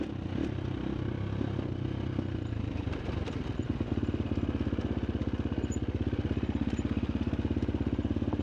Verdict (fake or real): real